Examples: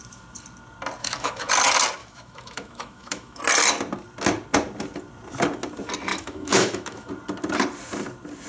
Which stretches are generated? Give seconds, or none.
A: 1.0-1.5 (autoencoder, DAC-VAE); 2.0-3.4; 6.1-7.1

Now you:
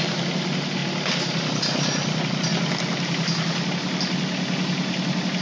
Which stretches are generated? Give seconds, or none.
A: none

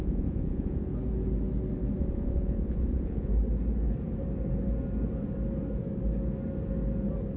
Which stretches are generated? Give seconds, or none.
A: 0.0-0.9 (vocoder, Vocos); 2.0-3.3

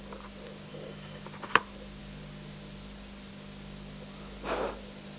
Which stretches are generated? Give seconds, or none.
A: 0.7-1.2 (codec, DAC)

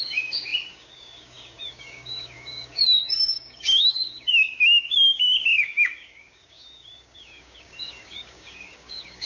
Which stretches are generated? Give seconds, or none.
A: 0.0-9.2 (codec, DAC)

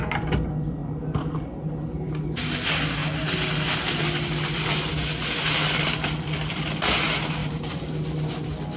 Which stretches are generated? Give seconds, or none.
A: 7.4-8.0 (vocoder, BigVGAN v2)

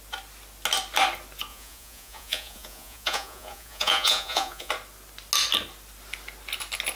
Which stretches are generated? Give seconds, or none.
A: 1.5-4.7 (vocoder, Vocos)